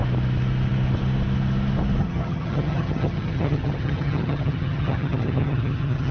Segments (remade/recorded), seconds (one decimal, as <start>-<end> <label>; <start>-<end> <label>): 0.0-2.0 recorded; 2.0-6.1 remade